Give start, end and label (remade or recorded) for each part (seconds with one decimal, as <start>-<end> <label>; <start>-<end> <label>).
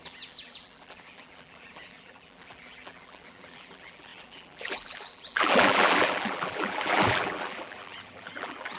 0.0-8.8 remade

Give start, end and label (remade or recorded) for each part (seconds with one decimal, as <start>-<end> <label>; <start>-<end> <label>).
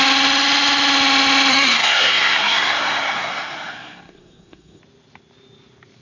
0.0-1.5 recorded; 1.5-4.8 remade; 4.8-6.0 recorded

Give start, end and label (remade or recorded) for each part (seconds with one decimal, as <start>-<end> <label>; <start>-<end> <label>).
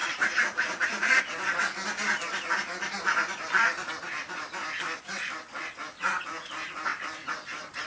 0.0-1.2 remade; 1.2-7.9 recorded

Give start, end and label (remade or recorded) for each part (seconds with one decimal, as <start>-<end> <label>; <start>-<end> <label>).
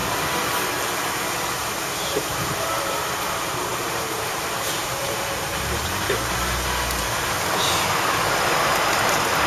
0.0-1.3 recorded; 1.3-9.5 remade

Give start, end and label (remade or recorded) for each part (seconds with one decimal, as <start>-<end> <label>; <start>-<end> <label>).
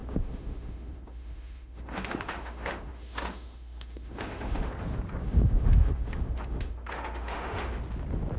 0.0-4.7 remade; 4.7-5.2 recorded; 5.2-7.8 remade; 7.8-8.4 recorded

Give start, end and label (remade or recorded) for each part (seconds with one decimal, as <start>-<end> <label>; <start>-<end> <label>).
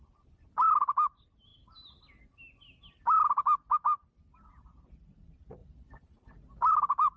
0.0-1.5 remade; 1.5-4.5 recorded; 4.5-5.6 remade; 5.6-6.7 recorded; 6.7-7.2 remade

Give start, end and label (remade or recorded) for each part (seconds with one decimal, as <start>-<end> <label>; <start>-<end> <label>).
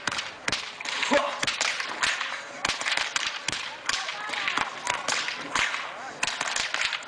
0.0-4.1 remade; 4.1-7.1 recorded